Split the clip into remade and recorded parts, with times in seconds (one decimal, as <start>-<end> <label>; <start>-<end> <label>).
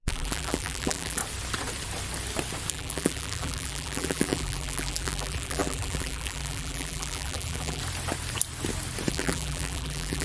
0.0-1.2 remade; 1.2-2.7 recorded; 2.7-7.8 remade; 7.8-9.1 recorded; 9.1-10.2 remade